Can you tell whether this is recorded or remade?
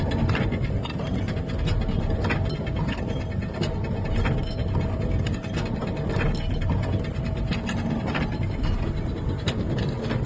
recorded